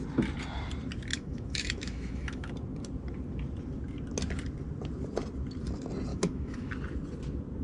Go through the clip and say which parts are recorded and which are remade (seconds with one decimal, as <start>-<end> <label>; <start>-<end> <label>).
0.0-1.1 recorded; 1.1-2.5 remade; 2.5-6.1 recorded; 6.1-6.7 remade; 6.7-7.6 recorded